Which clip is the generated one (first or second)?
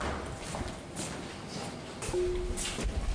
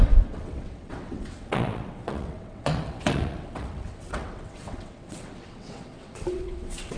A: second